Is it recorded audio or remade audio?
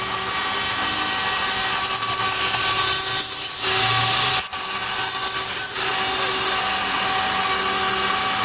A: recorded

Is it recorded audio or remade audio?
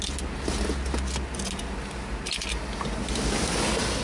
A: recorded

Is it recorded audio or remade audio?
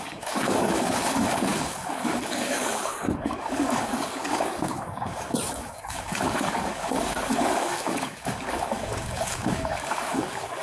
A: remade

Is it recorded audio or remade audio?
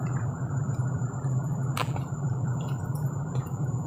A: remade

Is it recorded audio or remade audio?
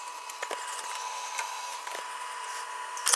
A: recorded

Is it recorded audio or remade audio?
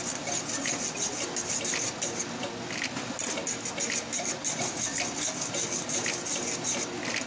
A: recorded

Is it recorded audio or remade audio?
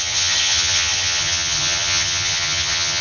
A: remade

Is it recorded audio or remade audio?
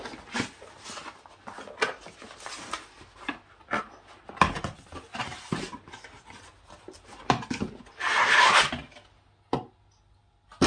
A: recorded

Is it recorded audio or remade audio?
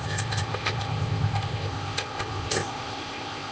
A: remade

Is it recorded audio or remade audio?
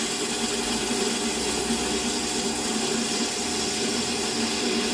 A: recorded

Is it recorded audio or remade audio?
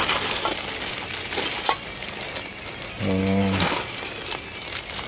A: recorded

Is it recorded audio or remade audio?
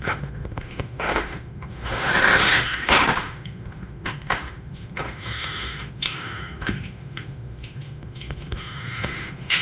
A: remade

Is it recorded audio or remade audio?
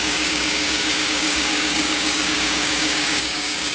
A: remade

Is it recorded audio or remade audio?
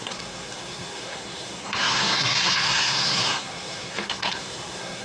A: remade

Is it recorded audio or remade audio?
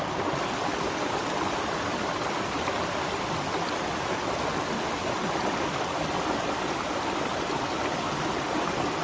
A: recorded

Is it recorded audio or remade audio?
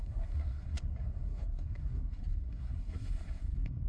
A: remade